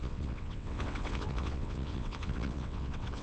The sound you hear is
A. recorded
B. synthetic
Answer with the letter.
B